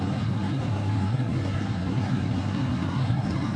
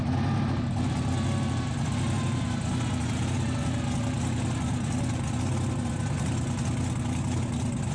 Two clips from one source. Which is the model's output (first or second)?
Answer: first